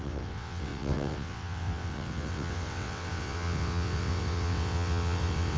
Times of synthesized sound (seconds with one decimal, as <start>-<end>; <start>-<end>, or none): 0.0-5.6